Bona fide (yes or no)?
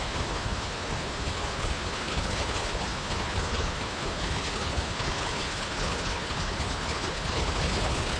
no